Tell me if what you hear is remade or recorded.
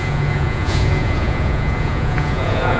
remade